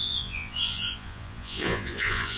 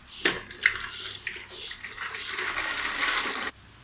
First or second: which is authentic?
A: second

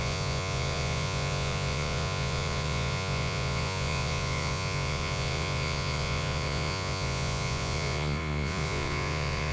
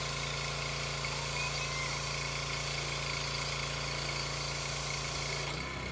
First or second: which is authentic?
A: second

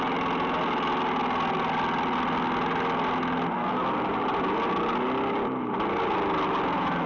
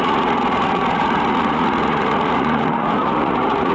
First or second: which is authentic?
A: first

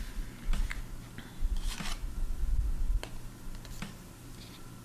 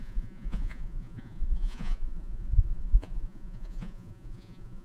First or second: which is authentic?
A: first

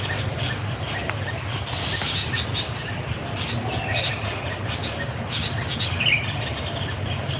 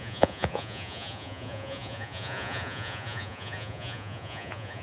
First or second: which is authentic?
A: first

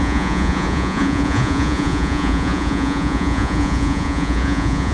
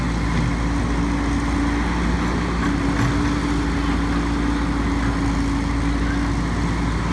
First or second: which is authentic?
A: second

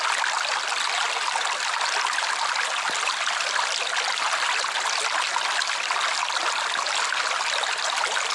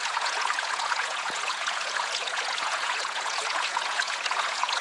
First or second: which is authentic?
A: first